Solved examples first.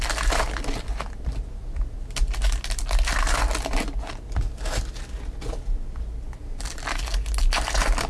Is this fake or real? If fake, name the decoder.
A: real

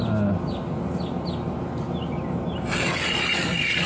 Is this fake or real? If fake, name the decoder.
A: real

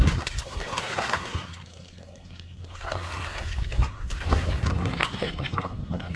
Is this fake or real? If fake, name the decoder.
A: fake, codec, SNAC